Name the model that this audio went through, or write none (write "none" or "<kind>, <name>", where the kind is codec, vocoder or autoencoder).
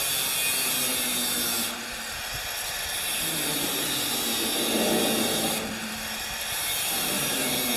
none